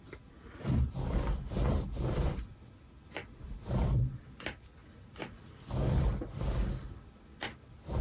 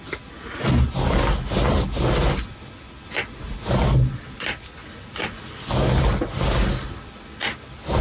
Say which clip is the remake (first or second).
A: first